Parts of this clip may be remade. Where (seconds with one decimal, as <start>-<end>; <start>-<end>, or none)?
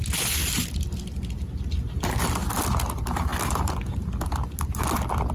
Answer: none